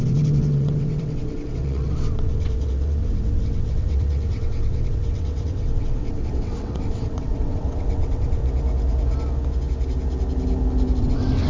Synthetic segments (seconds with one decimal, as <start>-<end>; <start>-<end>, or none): 0.0-8.4; 11.0-11.5